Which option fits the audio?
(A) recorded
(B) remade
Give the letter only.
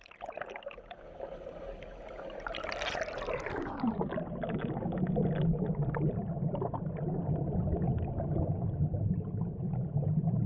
A